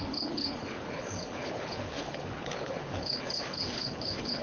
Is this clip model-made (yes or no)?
yes